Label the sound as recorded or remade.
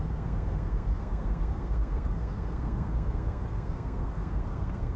remade